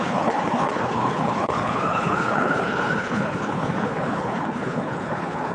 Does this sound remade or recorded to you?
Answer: remade